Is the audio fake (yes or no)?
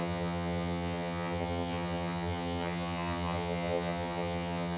yes